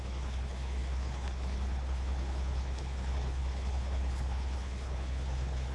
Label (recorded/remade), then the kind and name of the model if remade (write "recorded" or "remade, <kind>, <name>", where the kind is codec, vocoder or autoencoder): remade, codec, HILCodec